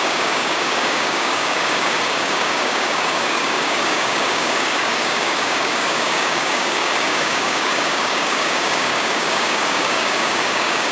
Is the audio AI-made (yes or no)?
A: yes